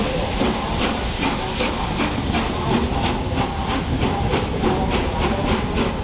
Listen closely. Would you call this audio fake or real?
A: real